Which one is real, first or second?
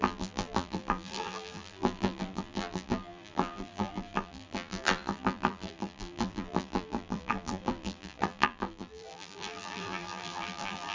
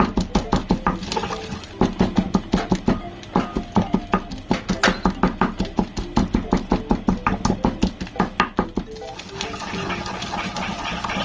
second